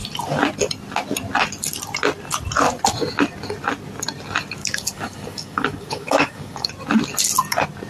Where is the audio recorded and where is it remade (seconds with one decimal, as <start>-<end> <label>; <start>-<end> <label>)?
0.0-4.6 recorded; 4.6-6.7 remade; 6.7-7.9 recorded